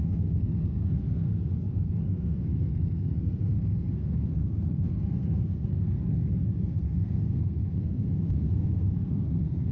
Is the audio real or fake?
fake